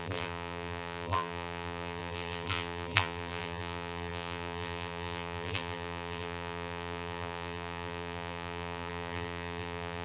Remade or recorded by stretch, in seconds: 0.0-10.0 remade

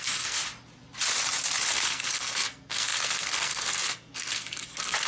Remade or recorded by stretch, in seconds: 0.0-0.4 remade; 0.4-1.7 recorded; 1.7-5.1 remade

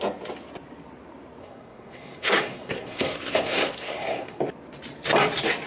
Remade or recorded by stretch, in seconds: 0.0-1.4 recorded; 1.4-4.4 remade; 4.4-5.7 recorded

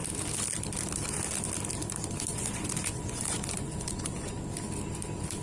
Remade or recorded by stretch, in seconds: 0.0-2.3 recorded; 2.3-4.4 remade; 4.4-5.4 recorded